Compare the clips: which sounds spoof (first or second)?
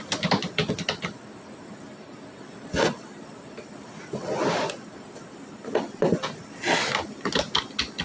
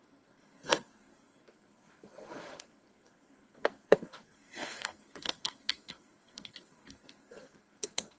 second